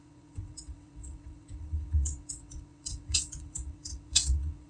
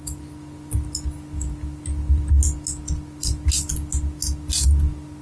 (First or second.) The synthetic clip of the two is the first